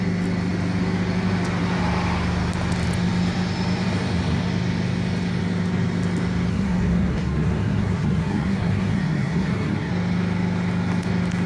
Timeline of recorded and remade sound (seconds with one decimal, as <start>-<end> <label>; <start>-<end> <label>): 0.0-6.5 recorded; 6.5-9.9 remade; 9.9-11.5 recorded